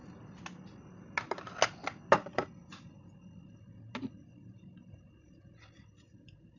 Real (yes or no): yes